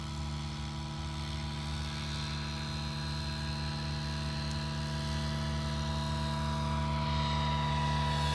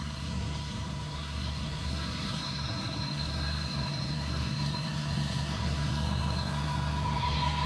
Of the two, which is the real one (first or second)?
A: first